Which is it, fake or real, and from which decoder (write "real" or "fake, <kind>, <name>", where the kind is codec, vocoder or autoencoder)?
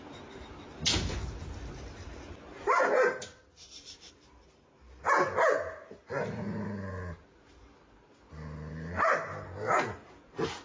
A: real